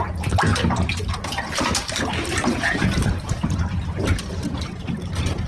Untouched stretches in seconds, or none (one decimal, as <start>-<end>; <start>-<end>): 0.0-0.5; 3.8-5.5